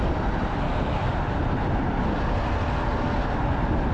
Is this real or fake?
real